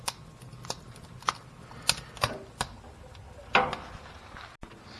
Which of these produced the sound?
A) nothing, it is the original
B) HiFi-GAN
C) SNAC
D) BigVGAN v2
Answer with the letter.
A